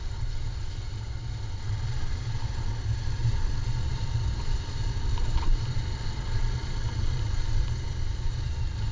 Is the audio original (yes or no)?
yes